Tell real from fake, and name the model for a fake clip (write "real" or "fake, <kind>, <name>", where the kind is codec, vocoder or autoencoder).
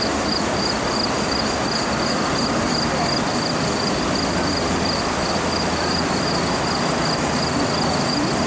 fake, vocoder, BigVGAN v2